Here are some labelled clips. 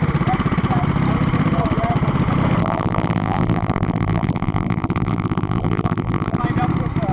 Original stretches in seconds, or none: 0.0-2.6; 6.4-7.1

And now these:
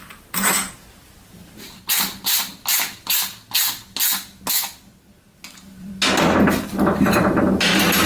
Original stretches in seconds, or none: 2.6-5.4; 5.9-7.1

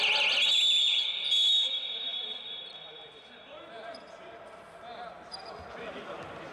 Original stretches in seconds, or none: 0.0-6.5

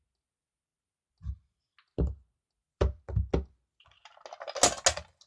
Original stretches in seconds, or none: 0.0-5.3